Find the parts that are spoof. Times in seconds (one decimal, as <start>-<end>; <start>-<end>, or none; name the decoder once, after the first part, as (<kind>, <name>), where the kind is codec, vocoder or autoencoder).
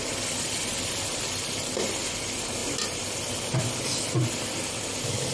0.7-1.9 (vocoder, BigVGAN v2); 2.6-3.7